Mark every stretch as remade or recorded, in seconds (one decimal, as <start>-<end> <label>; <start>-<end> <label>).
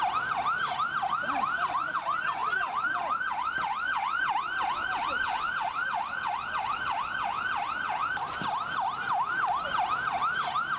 0.0-10.8 recorded